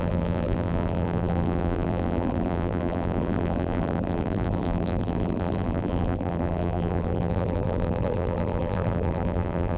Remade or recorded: remade